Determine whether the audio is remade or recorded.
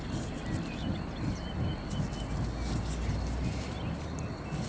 recorded